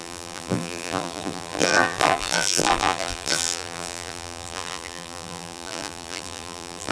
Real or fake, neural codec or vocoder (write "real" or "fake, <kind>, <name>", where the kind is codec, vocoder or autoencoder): fake, vocoder, BigVGAN v2